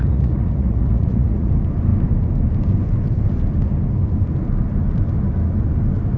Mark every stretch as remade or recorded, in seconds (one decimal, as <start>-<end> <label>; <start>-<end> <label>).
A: 0.0-1.5 remade; 1.5-6.2 recorded